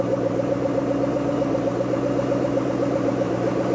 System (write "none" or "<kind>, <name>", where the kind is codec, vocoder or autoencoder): vocoder, BigVGAN v2